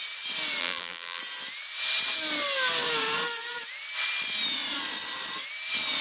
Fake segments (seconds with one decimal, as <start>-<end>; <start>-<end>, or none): 0.6-1.2